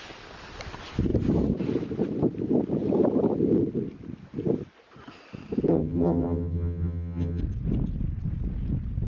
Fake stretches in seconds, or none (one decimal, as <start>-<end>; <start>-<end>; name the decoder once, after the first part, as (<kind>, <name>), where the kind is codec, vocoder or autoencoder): 5.7-7.4 (vocoder, HiFi-GAN)